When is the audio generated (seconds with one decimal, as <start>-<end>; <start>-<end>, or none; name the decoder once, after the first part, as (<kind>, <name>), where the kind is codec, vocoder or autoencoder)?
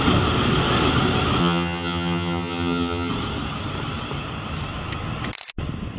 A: 1.4-3.1 (vocoder, HiFi-GAN)